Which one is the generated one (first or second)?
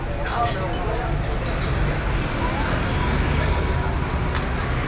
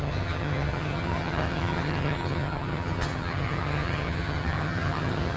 second